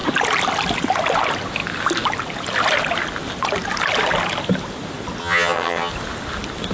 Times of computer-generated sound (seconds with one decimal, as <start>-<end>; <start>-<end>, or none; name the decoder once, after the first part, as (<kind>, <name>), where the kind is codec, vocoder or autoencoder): 5.2-5.9 (vocoder, HiFi-GAN)